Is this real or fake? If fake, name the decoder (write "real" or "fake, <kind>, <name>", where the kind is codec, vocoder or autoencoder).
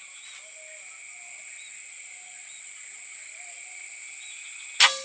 real